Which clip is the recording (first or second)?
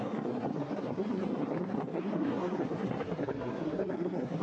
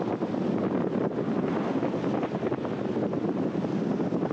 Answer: second